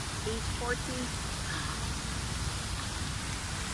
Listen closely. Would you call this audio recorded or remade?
recorded